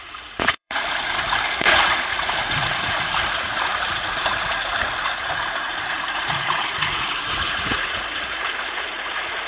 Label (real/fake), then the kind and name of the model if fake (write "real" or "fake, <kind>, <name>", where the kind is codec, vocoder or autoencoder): fake, vocoder, Vocos